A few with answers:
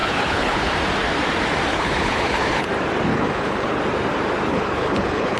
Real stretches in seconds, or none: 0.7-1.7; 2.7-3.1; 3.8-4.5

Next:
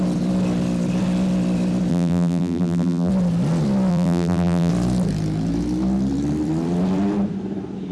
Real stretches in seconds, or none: 0.0-1.9; 3.1-3.9; 4.7-7.9

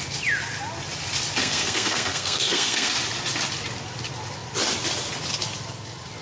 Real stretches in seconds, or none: 0.0-1.4; 2.9-6.2